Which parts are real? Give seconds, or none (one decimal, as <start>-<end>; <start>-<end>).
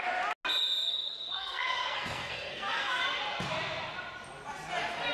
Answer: 0.0-0.9; 3.0-5.1